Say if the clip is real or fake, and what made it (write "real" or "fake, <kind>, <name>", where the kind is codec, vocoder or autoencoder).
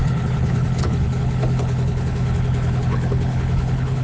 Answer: fake, codec, HILCodec